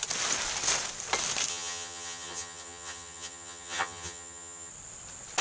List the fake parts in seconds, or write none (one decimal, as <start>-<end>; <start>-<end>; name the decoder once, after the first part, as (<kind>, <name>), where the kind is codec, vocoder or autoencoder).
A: 1.5-4.7 (vocoder, HiFi-GAN)